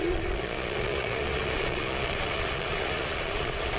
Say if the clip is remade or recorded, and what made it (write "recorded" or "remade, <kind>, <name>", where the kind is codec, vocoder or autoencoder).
remade, vocoder, Vocos